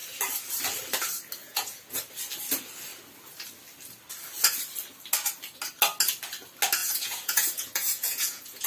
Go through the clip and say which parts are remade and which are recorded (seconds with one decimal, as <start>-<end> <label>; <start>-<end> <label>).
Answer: 0.0-1.4 recorded; 1.4-2.0 remade; 2.0-6.8 recorded; 6.8-8.7 remade